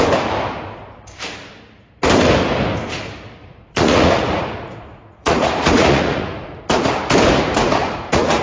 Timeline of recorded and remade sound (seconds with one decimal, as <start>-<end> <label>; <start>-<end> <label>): 0.0-3.4 recorded; 3.4-6.6 remade; 6.6-7.8 recorded; 7.8-8.4 remade

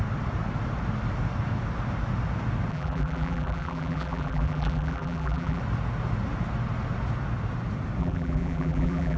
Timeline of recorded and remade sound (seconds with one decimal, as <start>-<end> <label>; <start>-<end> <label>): 0.0-2.7 recorded; 2.7-5.6 remade; 5.6-8.0 recorded; 8.0-9.2 remade